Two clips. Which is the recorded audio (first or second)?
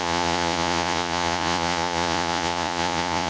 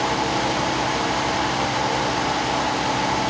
second